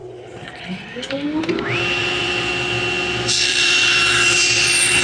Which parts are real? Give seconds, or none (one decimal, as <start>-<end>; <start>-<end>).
0.0-2.0; 2.5-3.5